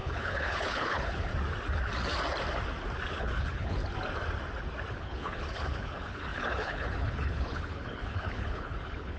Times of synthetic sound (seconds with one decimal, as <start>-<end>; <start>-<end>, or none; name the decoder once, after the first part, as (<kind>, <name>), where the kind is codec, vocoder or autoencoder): 0.0-1.3 (codec, HILCodec); 3.1-3.8; 4.9-9.2